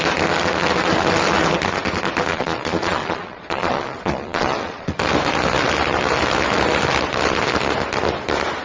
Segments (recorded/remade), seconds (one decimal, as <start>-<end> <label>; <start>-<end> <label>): 0.0-2.3 recorded; 2.3-5.0 remade; 5.0-8.6 recorded